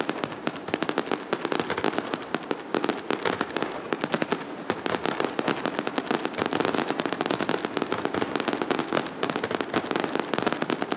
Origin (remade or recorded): recorded